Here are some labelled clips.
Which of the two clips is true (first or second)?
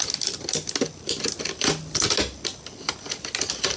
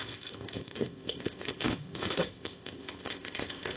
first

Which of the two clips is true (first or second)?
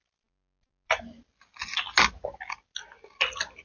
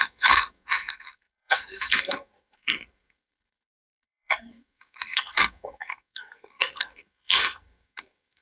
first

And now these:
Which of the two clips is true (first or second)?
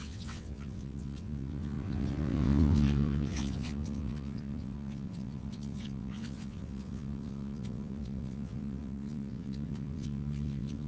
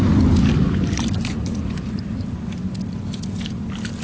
second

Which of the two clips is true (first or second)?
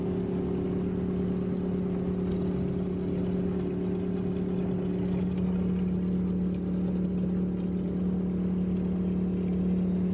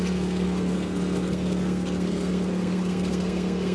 first